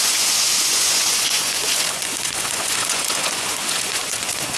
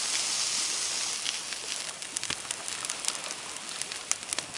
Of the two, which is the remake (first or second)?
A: first